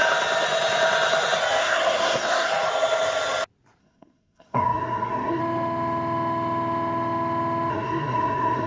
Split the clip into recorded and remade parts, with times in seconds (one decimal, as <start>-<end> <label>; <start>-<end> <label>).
0.0-1.6 recorded; 1.6-2.5 remade; 2.5-3.8 recorded; 3.8-5.4 remade; 5.4-7.7 recorded; 7.7-8.7 remade